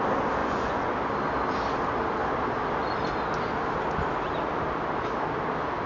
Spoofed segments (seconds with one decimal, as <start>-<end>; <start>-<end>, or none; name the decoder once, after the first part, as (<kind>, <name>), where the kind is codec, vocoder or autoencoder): 0.4-0.9 (vocoder, Vocos)